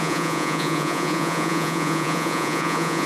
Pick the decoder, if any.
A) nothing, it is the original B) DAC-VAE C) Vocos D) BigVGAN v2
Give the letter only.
C